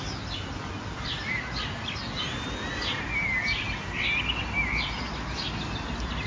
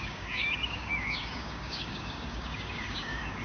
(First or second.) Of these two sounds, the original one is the first